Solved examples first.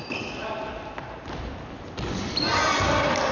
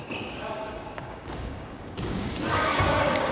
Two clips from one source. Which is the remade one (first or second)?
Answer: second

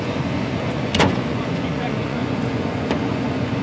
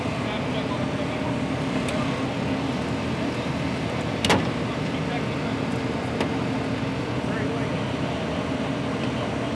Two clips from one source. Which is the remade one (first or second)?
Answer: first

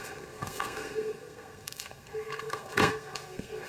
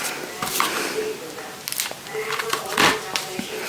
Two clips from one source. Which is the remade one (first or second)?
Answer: first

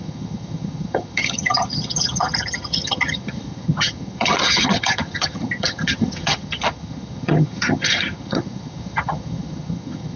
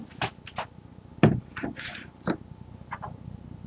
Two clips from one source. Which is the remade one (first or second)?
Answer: first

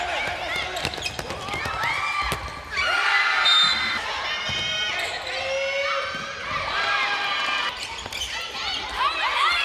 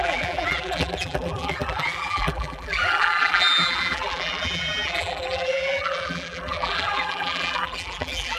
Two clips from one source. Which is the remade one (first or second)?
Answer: second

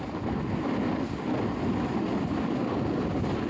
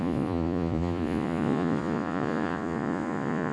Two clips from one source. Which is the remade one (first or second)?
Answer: second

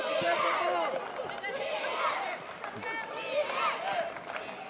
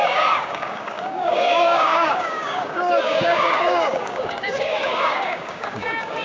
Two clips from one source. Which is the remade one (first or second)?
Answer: second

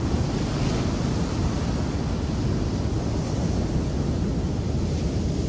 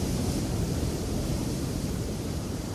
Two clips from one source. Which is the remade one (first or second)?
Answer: second